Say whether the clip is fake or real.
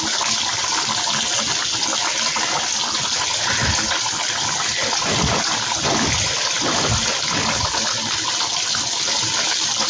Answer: real